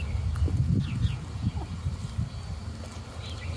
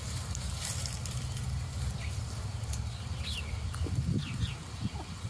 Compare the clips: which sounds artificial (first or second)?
second